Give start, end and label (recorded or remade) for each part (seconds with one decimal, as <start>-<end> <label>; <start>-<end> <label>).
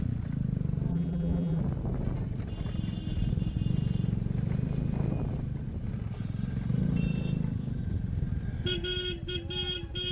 0.0-0.9 recorded; 0.9-1.6 remade; 1.6-10.1 recorded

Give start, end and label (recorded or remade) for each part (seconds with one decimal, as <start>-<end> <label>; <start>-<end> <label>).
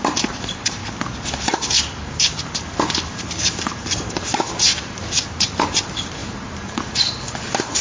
0.0-0.8 remade; 0.8-2.1 recorded; 2.1-7.8 remade